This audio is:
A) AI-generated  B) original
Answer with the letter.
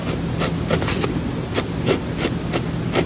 B